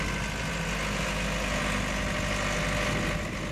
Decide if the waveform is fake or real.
real